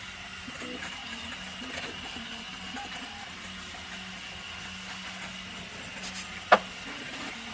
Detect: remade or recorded recorded